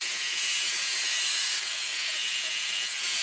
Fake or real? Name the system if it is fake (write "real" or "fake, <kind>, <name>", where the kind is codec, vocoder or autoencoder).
fake, vocoder, Vocos